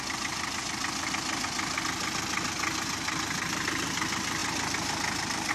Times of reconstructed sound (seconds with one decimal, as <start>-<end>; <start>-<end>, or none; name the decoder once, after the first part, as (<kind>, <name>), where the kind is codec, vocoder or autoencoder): none